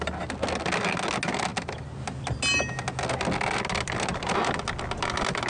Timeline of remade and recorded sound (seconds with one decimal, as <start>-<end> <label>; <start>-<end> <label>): 0.0-5.5 recorded